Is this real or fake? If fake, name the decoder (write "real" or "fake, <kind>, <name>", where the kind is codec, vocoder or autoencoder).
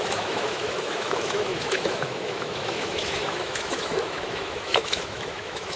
fake, autoencoder, DAC-VAE